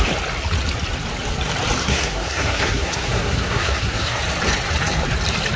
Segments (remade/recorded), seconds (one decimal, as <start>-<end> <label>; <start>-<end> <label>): 0.0-1.8 recorded; 1.8-4.2 remade; 4.2-5.6 recorded

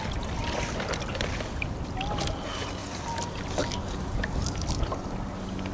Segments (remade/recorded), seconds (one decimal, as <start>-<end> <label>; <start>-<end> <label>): 0.0-5.7 recorded

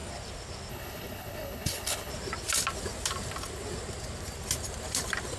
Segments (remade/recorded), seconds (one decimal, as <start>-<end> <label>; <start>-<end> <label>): 0.0-0.7 recorded; 0.7-2.1 remade; 2.1-5.4 recorded

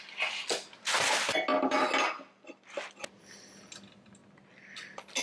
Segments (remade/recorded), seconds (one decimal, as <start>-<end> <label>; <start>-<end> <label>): 0.0-5.2 recorded

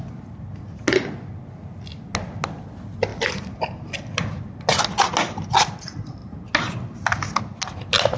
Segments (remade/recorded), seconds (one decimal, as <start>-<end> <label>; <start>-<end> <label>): 0.0-3.1 recorded; 3.1-4.4 remade; 4.4-8.2 recorded

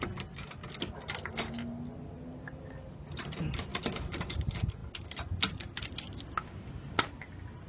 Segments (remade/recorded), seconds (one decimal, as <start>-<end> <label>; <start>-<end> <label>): 0.0-7.7 recorded